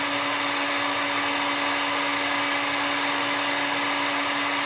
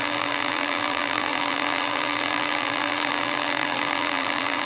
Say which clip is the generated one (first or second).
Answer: second